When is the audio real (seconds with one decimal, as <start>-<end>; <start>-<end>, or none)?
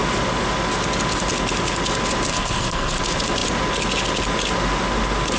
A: 0.0-2.3; 3.0-5.4